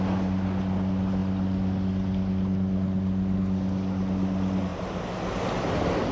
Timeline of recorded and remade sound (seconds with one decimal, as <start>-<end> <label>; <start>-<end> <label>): 0.0-6.1 recorded